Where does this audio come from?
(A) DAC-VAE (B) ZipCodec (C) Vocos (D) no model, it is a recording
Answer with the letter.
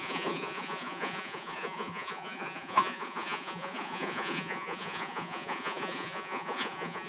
C